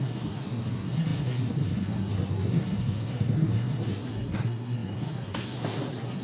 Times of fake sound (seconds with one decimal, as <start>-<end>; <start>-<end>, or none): 0.0-6.2